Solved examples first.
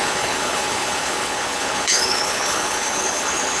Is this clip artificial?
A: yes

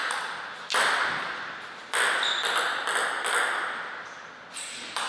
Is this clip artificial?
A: no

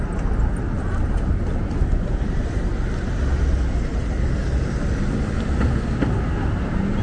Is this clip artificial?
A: no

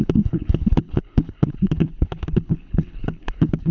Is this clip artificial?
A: yes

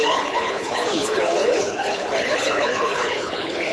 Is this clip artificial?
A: yes